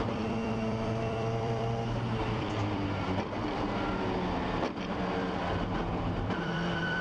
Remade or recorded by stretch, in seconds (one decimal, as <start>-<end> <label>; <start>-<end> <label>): 0.0-7.0 remade